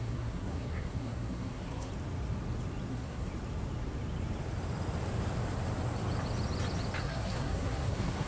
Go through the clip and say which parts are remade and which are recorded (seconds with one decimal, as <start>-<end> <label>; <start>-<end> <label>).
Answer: 0.0-1.9 remade; 1.9-2.9 recorded; 2.9-3.3 remade; 3.3-7.0 recorded; 7.0-8.3 remade